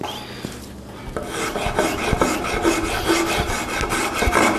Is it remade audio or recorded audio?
recorded